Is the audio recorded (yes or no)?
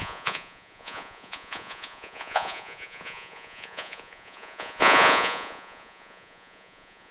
no